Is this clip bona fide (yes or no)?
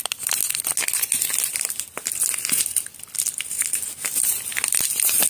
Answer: yes